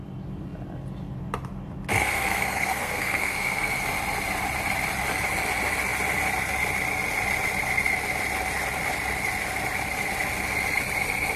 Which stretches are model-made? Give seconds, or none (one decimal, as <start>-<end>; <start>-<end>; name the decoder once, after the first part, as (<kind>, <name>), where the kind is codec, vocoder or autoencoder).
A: 1.9-3.7 (codec, SNAC)

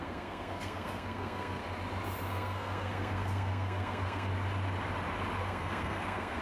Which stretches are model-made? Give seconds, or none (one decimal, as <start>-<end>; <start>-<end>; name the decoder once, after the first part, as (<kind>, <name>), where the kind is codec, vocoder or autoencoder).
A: 0.0-1.6 (codec, SNAC); 2.3-4.3; 5.4-6.4

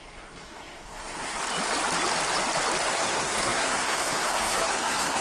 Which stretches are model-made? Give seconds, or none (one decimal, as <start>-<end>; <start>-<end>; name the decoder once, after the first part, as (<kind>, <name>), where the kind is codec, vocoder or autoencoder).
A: 0.0-1.4 (codec, SNAC); 2.9-5.2

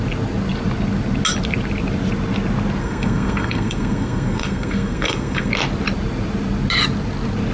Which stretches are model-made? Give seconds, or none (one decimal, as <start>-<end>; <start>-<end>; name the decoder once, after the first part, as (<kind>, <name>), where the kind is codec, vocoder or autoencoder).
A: 2.8-5.5 (codec, SNAC)

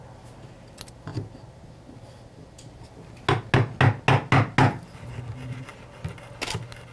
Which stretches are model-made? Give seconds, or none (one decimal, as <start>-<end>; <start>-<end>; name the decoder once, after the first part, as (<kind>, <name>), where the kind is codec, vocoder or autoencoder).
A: none